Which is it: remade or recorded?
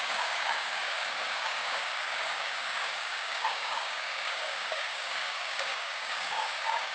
remade